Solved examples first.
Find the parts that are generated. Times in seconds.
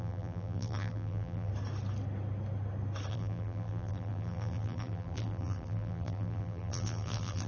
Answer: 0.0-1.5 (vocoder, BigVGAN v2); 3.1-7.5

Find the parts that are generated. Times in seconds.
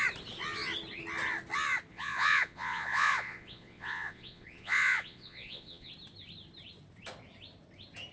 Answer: 1.9-5.9 (vocoder, Vocos)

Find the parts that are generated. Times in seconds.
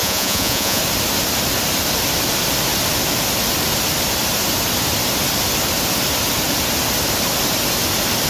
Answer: 0.0-0.8 (vocoder, Vocos)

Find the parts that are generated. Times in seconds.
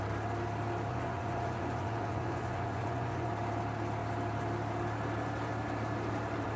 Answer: 0.9-3.3 (vocoder, Vocos)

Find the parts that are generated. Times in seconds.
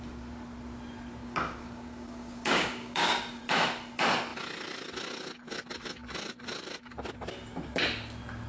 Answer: 1.2-3.4 (codec, DAC)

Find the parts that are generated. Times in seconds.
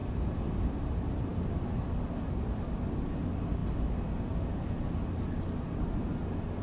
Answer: none